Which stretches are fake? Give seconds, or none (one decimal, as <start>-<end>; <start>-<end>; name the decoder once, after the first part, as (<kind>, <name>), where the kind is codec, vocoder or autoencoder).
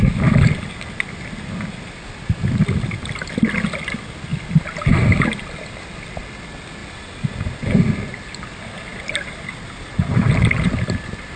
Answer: none